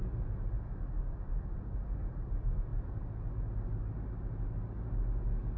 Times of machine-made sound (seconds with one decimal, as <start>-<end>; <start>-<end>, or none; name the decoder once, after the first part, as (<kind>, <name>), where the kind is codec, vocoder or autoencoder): none